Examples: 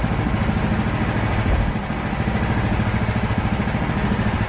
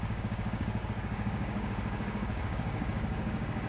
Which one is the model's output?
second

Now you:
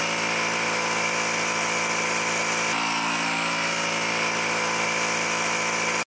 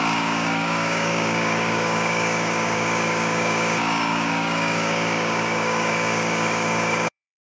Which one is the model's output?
second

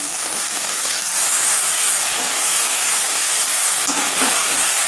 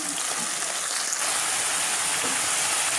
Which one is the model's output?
first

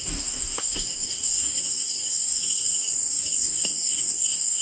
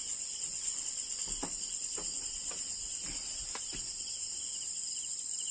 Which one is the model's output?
first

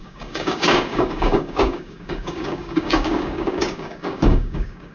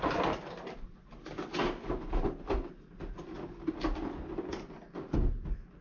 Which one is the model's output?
first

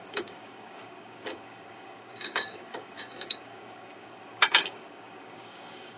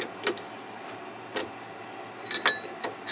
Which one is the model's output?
first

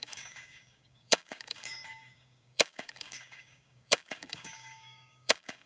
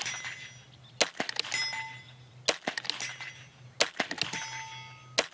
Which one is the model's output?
first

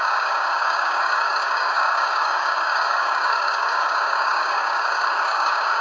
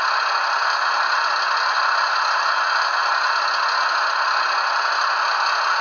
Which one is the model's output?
first